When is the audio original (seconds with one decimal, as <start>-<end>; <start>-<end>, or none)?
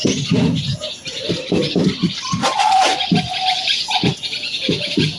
1.2-3.6